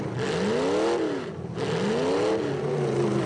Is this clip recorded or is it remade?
recorded